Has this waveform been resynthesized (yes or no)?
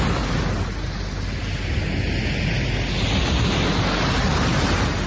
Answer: no